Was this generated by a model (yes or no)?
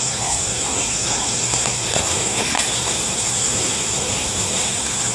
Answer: yes